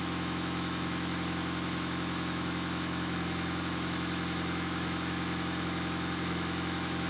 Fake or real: fake